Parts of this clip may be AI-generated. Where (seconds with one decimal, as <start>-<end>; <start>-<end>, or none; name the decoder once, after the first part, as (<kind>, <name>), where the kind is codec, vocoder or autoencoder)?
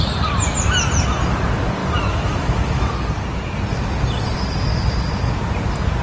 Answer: 1.8-2.9 (autoencoder, DAC-VAE)